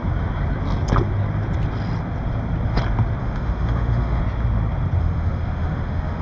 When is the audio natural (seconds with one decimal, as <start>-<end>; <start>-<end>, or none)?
0.0-3.2; 4.2-5.0